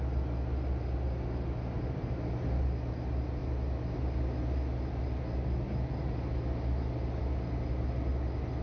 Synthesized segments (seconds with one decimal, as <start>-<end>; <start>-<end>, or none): none